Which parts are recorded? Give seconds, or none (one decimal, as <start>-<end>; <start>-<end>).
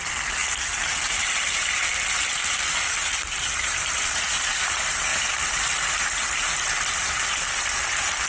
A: 0.0-0.4; 1.9-2.4; 4.2-5.1; 5.9-8.3